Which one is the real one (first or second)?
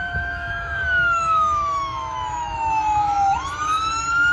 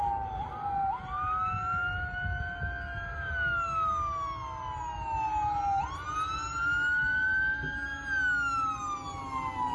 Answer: second